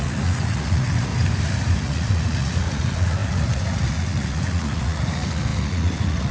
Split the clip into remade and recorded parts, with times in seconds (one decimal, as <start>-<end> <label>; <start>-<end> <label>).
0.0-1.1 remade; 1.1-1.8 recorded; 1.8-6.3 remade